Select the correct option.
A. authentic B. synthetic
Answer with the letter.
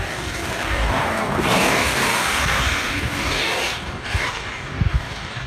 B